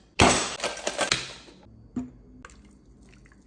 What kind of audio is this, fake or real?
real